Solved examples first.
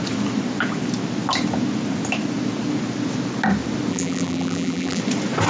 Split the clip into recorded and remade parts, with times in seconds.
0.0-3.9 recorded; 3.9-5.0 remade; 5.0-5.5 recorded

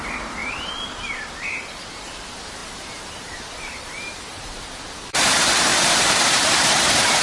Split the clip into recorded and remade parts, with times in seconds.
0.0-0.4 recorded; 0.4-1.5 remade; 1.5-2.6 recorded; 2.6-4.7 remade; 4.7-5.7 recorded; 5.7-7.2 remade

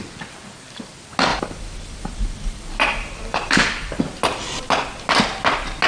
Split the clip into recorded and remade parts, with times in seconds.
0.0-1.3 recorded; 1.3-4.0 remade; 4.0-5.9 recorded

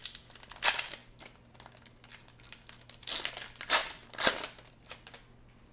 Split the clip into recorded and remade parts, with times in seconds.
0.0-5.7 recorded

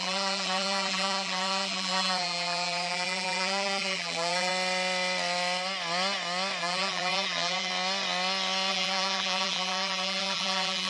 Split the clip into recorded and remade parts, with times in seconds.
0.0-4.5 remade; 4.5-6.6 recorded; 6.6-7.7 remade; 7.7-8.7 recorded; 8.7-10.9 remade